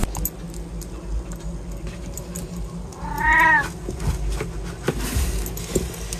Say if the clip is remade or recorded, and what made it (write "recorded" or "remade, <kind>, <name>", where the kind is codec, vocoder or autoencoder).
recorded